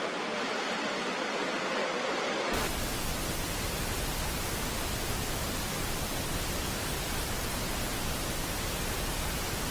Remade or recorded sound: recorded